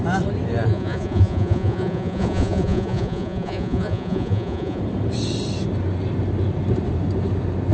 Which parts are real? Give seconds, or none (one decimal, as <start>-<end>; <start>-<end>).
0.0-0.7; 4.8-7.7